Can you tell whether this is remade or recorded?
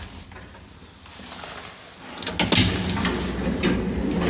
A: recorded